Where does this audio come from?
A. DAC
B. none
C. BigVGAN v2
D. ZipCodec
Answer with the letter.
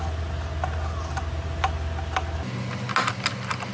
B